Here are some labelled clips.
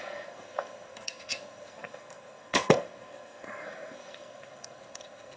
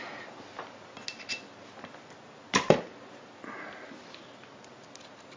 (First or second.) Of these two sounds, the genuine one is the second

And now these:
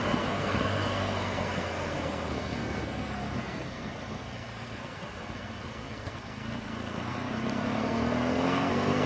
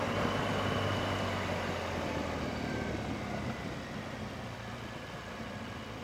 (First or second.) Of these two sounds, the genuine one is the second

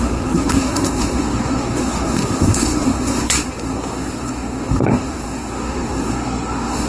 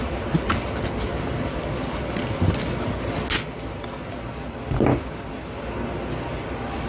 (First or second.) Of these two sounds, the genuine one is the second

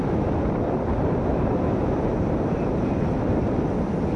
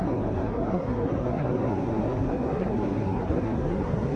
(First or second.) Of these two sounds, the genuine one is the first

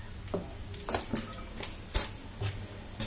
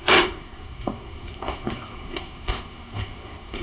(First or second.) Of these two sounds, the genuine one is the first